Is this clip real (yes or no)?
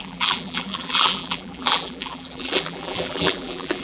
no